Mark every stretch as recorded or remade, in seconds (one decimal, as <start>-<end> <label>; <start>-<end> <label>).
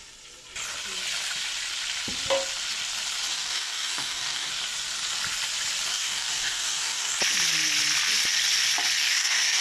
0.0-3.3 recorded; 3.3-4.5 remade; 4.5-5.9 recorded; 5.9-7.1 remade; 7.1-9.0 recorded; 9.0-9.6 remade